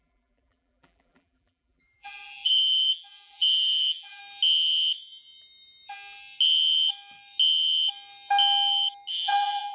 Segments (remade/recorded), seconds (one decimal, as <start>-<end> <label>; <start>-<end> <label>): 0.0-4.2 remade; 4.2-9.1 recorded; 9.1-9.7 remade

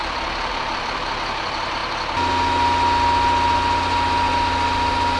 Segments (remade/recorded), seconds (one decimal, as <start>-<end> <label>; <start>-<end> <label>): 0.0-1.8 remade; 1.8-5.2 recorded

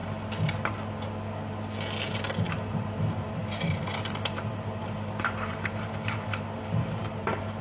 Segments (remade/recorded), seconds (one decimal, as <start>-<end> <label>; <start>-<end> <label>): 0.0-2.5 recorded; 2.5-7.6 remade

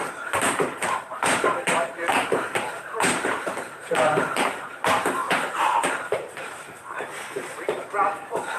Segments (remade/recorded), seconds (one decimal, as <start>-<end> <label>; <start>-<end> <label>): 0.0-8.6 remade

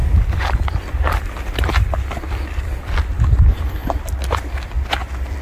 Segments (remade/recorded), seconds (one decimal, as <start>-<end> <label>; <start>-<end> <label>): 0.0-5.4 recorded

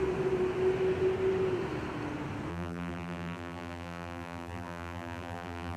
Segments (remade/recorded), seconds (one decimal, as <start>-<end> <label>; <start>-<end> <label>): 0.0-2.5 recorded; 2.5-5.8 remade

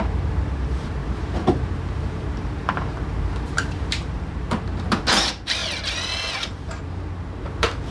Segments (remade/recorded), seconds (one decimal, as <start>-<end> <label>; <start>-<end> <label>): 0.0-5.6 remade; 5.6-6.5 recorded; 6.5-7.9 remade